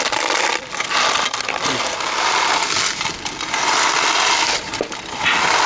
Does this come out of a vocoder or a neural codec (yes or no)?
no